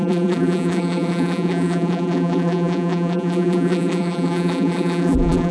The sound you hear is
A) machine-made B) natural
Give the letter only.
A